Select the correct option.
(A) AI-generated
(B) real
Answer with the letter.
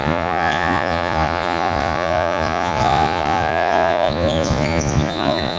A